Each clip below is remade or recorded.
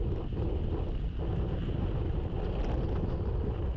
recorded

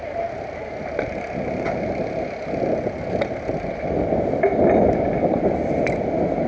recorded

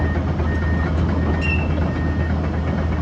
recorded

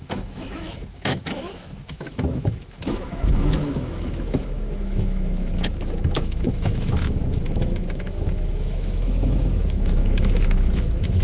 remade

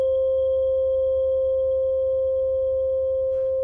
remade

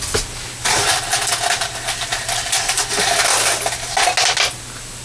recorded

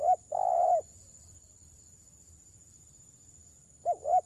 recorded